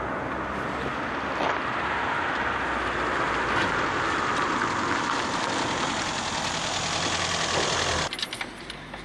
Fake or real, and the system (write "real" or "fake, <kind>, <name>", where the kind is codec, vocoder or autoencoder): real